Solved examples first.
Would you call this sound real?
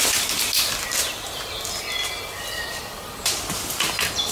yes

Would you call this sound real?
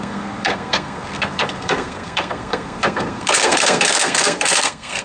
no